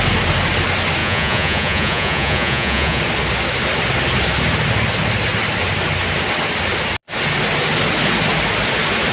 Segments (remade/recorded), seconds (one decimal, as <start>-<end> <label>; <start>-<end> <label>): 0.0-1.0 recorded; 1.0-3.0 remade; 3.0-9.1 recorded